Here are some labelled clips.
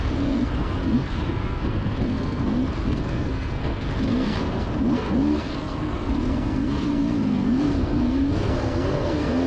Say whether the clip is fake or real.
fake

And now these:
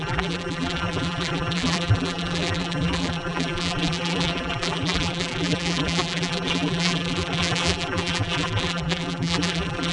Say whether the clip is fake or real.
fake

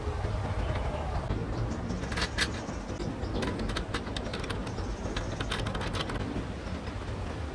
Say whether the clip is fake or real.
real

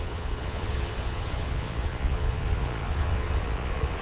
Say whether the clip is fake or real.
fake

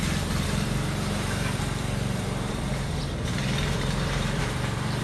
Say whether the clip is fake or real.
fake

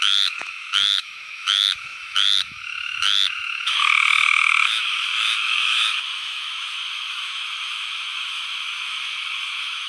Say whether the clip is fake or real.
fake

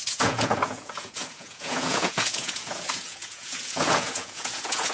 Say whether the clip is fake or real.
fake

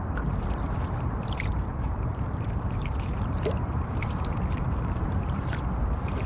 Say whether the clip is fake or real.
fake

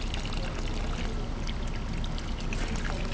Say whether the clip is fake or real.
real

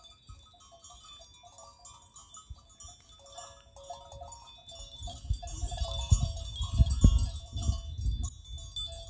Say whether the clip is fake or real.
real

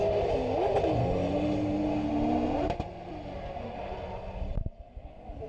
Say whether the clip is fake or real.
real